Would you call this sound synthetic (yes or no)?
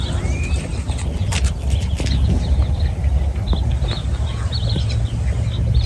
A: no